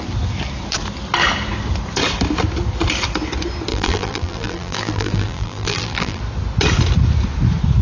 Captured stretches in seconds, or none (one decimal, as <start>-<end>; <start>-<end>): 0.0-3.7; 6.2-7.8